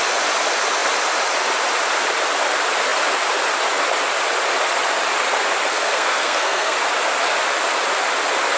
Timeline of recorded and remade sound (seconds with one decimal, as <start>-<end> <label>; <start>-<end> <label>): 0.0-5.7 recorded; 5.7-6.8 remade; 6.8-8.6 recorded